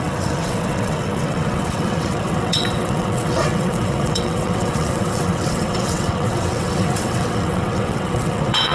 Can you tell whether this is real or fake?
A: fake